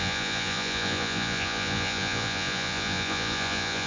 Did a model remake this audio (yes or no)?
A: yes